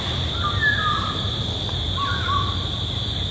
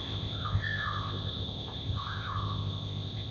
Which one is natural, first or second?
first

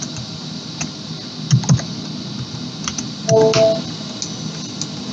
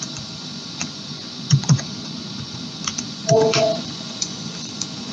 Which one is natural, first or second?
first